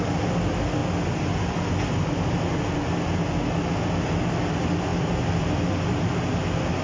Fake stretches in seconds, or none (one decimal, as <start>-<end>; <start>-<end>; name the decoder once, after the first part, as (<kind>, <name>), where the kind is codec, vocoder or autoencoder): none